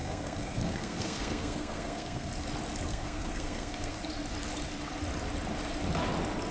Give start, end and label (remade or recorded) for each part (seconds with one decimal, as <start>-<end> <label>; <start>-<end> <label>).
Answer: 0.0-2.3 remade; 2.3-2.9 recorded; 2.9-4.0 remade; 4.0-6.5 recorded